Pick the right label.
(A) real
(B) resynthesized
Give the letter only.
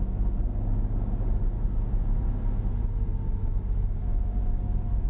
A